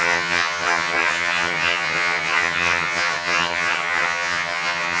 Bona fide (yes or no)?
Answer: no